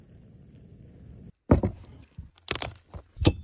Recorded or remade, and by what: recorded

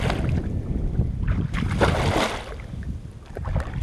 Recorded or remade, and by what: recorded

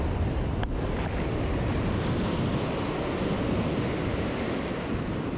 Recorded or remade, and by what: recorded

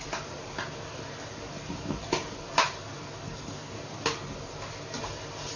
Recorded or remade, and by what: recorded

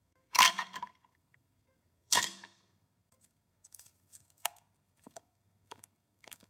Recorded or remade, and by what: remade, codec, SNAC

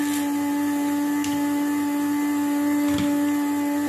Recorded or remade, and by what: recorded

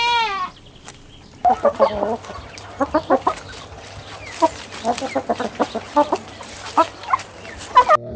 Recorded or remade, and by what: recorded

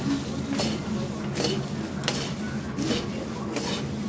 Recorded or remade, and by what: recorded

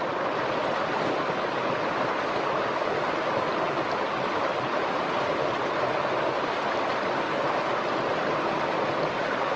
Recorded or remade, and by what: recorded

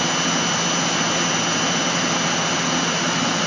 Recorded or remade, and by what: recorded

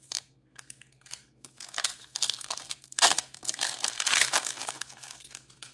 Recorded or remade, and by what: remade, codec, SNAC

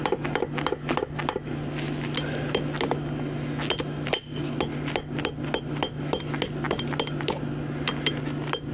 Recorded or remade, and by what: recorded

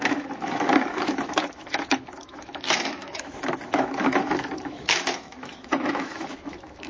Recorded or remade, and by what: remade, autoencoder, DAC-VAE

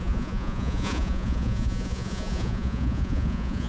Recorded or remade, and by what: remade, vocoder, Vocos